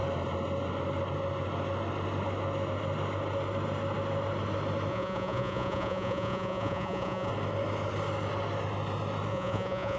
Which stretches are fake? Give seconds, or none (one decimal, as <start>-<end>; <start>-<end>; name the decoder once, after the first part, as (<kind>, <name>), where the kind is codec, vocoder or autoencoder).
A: 4.9-7.3 (vocoder, Vocos); 9.3-10.0